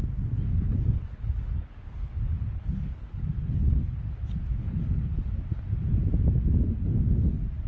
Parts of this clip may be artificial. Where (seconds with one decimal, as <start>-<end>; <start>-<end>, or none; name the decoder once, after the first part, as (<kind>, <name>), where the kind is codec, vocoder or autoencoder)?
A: 0.5-4.0 (codec, HILCodec); 4.6-5.3